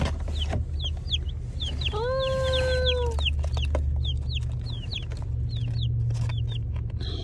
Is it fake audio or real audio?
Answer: real